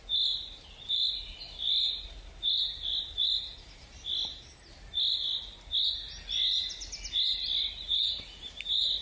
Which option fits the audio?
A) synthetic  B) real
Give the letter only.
B